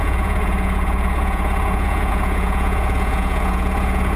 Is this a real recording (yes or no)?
no